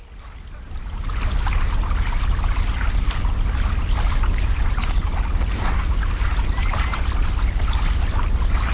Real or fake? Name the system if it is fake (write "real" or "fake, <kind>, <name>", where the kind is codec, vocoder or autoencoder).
real